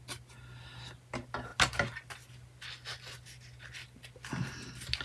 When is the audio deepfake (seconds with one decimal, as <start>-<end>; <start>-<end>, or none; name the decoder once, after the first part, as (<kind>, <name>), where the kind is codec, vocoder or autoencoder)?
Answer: none